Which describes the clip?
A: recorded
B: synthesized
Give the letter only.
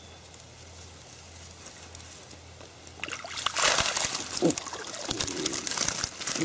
A